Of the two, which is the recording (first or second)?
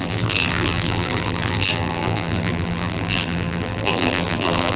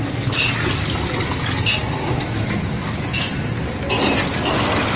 second